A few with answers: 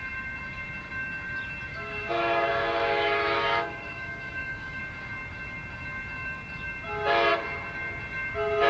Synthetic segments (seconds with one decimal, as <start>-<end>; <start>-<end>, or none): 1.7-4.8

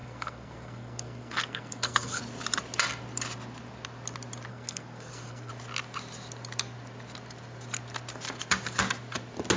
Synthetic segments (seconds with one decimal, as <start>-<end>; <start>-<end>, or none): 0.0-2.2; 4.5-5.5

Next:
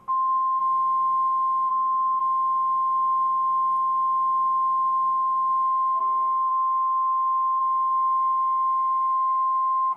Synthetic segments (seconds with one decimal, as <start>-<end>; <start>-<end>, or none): 0.0-0.6; 1.7-2.2; 6.0-10.0

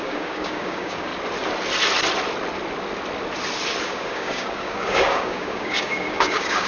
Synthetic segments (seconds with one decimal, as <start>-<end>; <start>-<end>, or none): 0.0-1.1; 3.8-6.7

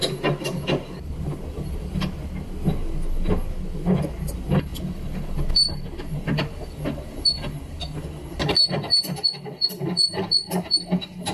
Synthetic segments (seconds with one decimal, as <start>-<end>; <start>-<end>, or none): none